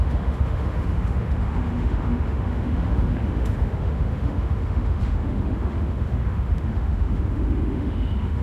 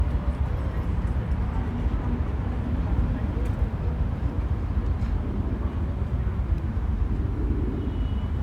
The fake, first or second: first